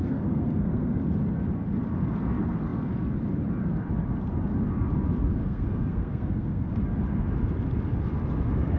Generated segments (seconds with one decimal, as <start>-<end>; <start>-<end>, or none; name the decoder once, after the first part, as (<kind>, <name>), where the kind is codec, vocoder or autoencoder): 0.0-0.9 (codec, SNAC); 5.4-6.7